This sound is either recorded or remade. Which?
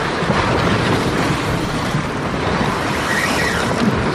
remade